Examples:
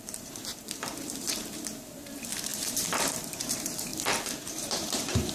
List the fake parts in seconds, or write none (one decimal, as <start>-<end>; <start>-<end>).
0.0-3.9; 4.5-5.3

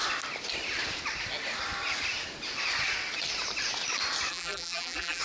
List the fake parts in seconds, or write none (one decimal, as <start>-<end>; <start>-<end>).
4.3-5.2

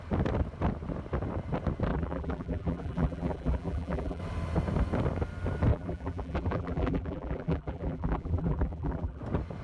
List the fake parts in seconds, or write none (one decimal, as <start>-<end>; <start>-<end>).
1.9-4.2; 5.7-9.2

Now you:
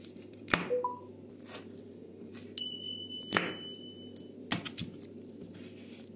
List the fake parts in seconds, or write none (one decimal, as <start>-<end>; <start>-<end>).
0.0-0.9; 1.8-2.4

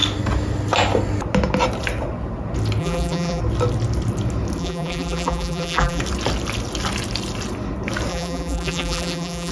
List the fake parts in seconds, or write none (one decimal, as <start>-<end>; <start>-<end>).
2.8-3.4; 4.6-6.0; 8.1-9.5

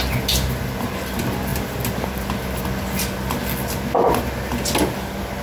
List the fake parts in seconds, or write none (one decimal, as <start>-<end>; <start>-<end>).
none